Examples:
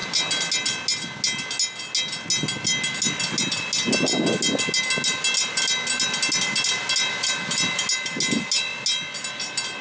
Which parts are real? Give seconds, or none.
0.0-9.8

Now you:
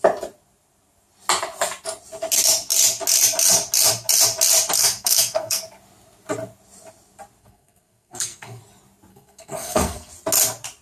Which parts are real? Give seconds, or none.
0.0-4.8; 5.6-7.4; 8.6-9.1; 10.1-10.8

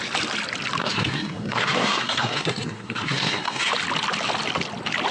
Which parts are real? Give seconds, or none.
0.0-0.8; 3.7-5.1

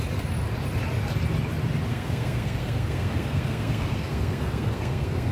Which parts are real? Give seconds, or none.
0.0-1.9

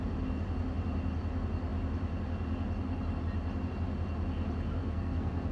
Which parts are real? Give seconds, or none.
0.0-4.8

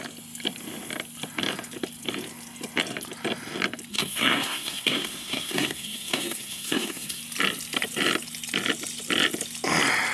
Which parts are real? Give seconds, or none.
0.0-3.9; 7.2-10.1